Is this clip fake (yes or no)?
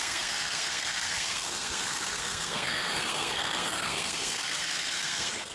yes